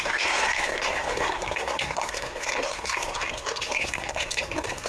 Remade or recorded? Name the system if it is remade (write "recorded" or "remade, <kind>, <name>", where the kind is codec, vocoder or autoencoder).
remade, codec, SNAC